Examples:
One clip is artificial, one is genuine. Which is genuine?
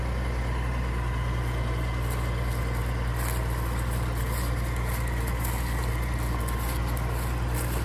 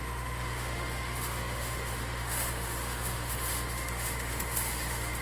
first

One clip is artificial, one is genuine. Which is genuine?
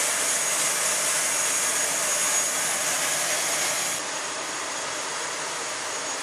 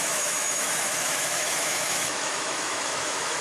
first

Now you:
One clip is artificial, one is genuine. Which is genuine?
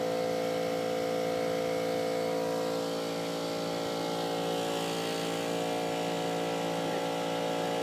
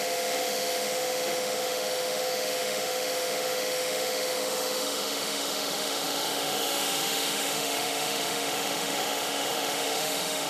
first